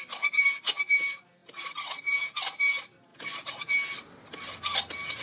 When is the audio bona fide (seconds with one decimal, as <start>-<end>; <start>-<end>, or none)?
0.0-5.2